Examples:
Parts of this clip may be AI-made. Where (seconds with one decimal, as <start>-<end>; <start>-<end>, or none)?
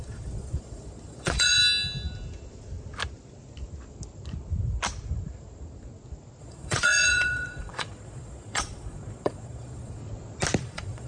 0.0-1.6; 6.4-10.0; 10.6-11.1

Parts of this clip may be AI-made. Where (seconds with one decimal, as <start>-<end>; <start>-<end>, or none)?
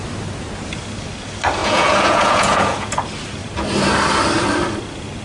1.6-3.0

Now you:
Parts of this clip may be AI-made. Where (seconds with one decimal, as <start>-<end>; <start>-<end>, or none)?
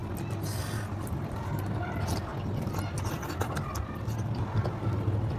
0.6-2.3; 3.5-5.4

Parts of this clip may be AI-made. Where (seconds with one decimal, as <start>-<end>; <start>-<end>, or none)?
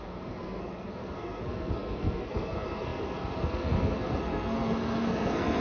0.0-5.6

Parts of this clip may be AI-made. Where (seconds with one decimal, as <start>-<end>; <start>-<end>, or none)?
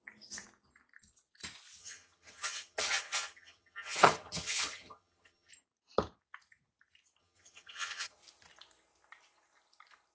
1.8-5.5; 7.2-8.2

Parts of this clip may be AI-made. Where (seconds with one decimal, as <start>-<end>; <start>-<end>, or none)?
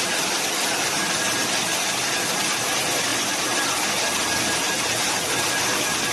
3.1-3.7